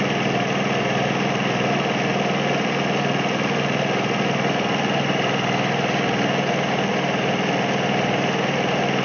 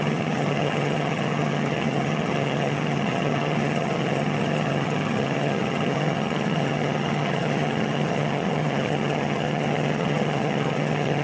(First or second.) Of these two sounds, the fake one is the second